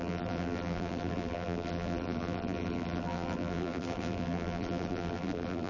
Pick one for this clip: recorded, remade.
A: remade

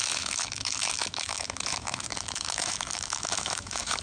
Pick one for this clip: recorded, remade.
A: remade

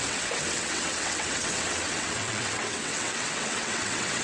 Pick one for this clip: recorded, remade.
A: remade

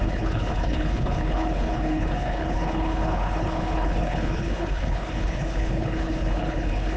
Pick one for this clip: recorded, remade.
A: remade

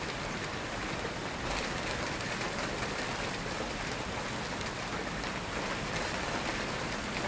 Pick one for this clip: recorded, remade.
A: recorded